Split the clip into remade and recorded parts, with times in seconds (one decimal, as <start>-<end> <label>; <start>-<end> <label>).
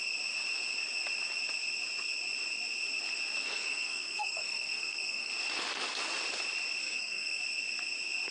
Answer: 0.0-3.4 recorded; 3.4-5.3 remade; 5.3-6.8 recorded; 6.8-7.4 remade; 7.4-8.3 recorded